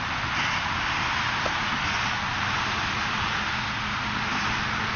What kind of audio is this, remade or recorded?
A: recorded